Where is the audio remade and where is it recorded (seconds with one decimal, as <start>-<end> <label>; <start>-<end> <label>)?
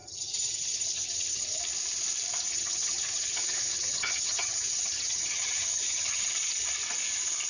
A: 0.0-1.6 remade; 1.6-2.5 recorded; 2.5-6.3 remade; 6.3-7.5 recorded